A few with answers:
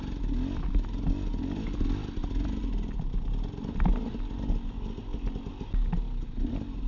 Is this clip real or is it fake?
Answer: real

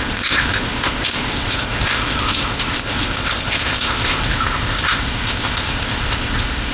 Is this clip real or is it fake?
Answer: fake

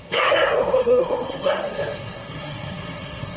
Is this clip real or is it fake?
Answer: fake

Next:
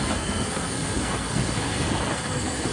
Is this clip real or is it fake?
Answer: fake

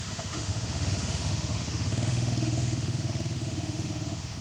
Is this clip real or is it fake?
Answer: fake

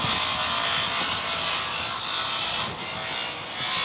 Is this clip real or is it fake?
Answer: real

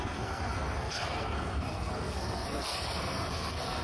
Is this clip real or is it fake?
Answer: fake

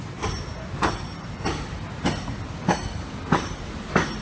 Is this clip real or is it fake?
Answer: real